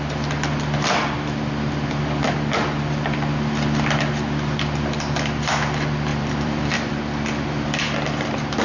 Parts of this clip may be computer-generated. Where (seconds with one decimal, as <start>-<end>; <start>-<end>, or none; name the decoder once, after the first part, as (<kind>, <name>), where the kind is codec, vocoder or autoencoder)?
6.1-6.9 (vocoder, BigVGAN v2)